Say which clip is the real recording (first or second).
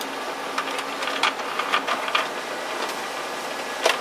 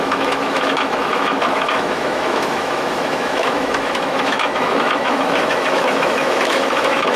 first